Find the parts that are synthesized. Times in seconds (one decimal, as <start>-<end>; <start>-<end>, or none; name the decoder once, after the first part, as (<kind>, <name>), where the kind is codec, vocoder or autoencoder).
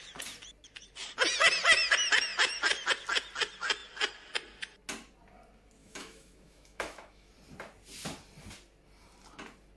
5.8-7.3 (autoencoder, DAC-VAE)